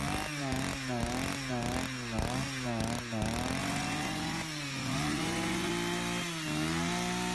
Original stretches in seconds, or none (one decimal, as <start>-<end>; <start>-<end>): 0.0-3.6; 5.7-7.3